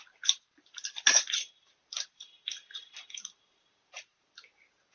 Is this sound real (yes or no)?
no